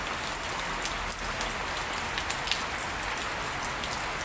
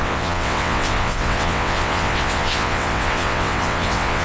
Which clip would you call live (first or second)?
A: first